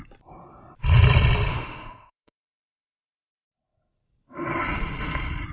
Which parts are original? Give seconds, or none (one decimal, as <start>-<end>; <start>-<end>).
0.0-1.5; 3.0-5.5